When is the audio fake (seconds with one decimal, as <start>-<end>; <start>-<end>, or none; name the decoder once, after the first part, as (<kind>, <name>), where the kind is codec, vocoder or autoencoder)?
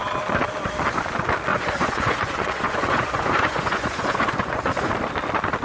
1.5-4.9 (vocoder, Vocos)